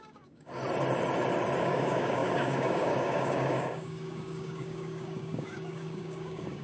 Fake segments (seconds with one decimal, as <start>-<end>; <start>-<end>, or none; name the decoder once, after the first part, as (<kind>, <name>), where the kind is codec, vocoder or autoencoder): 0.0-0.6 (codec, DAC); 1.6-6.6